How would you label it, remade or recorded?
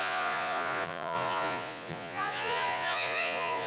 remade